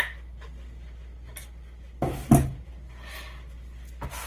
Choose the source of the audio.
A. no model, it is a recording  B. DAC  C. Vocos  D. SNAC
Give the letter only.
A